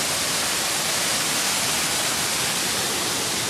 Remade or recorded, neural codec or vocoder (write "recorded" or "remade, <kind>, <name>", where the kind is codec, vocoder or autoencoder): recorded